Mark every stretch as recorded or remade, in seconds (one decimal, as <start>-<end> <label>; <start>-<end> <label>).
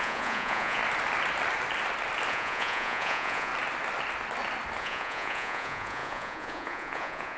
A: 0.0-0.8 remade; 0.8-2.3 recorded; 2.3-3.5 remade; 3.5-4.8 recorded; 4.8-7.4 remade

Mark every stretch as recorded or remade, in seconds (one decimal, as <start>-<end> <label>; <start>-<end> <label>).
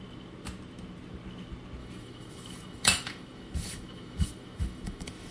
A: 0.0-1.8 recorded; 1.8-5.3 remade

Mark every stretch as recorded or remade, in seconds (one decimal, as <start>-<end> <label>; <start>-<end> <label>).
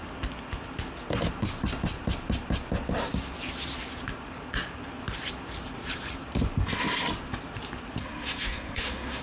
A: 0.0-8.0 recorded; 8.0-9.2 remade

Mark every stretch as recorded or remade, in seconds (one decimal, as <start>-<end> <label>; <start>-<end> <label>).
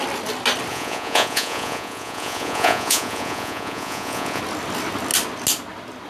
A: 0.0-0.7 recorded; 0.7-4.4 remade; 4.4-6.1 recorded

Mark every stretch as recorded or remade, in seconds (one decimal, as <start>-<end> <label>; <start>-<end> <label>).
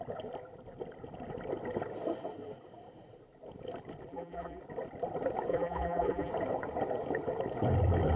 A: 0.0-4.1 recorded; 4.1-4.6 remade; 4.6-5.5 recorded; 5.5-6.3 remade; 6.3-8.2 recorded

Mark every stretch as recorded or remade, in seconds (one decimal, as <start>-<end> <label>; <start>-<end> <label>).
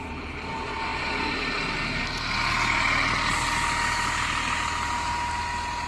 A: 0.0-5.9 recorded